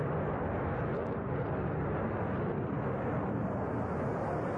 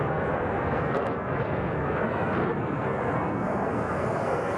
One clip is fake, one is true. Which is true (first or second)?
first